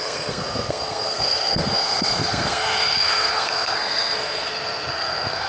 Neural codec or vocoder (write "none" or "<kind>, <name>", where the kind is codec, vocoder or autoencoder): codec, SNAC